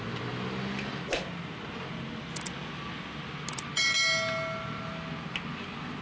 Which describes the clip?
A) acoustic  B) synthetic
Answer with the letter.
A